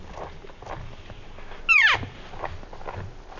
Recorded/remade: recorded